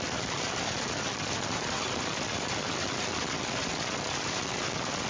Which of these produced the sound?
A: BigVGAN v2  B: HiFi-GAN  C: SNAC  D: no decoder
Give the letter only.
D